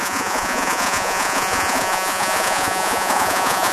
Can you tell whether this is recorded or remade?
remade